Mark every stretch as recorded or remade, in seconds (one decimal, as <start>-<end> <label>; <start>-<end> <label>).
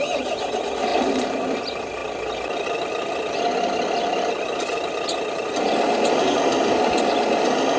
0.0-0.9 recorded; 0.9-1.6 remade; 1.6-7.8 recorded